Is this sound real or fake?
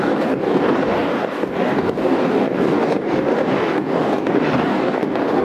fake